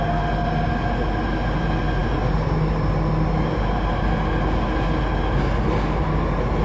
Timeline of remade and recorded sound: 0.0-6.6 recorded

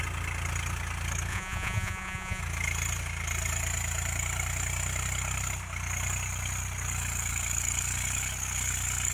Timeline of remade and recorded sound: 0.0-1.3 recorded; 1.3-2.4 remade; 2.4-9.1 recorded